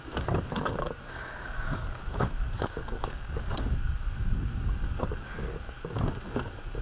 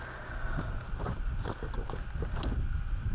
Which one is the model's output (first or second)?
first